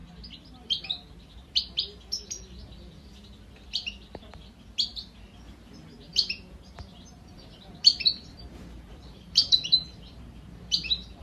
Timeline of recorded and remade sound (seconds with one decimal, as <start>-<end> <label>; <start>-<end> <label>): 0.0-6.1 recorded; 6.1-11.2 remade